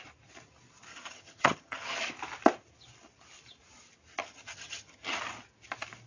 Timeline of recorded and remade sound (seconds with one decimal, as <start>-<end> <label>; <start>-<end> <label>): 0.0-0.9 recorded; 0.9-2.1 remade; 2.1-4.2 recorded; 4.2-5.2 remade; 5.2-6.1 recorded